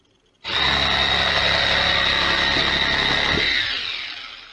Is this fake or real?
real